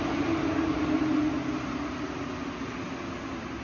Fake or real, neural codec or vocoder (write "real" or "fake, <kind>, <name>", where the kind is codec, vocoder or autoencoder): real